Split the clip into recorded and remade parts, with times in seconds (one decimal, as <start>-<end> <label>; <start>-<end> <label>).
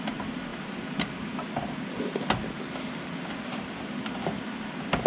0.0-5.1 recorded